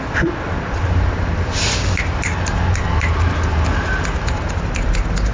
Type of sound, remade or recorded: recorded